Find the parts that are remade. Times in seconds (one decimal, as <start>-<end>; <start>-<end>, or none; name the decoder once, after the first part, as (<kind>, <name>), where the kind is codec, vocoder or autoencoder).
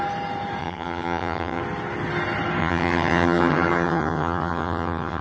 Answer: 0.6-1.6 (vocoder, HiFi-GAN); 2.6-5.2